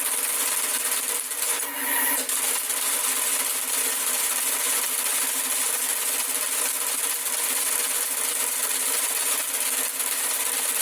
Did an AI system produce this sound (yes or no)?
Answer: no